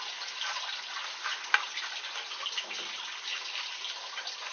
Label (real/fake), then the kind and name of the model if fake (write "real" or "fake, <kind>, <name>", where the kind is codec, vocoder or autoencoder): real